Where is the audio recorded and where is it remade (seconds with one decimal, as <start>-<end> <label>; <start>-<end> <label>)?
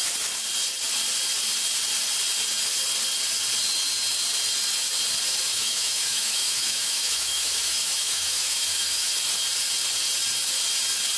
0.0-5.5 recorded; 5.5-9.1 remade; 9.1-11.2 recorded